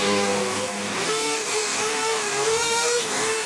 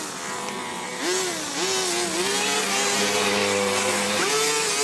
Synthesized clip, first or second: first